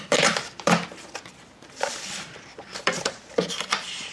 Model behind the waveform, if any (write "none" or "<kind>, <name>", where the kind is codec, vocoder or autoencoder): vocoder, BigVGAN v2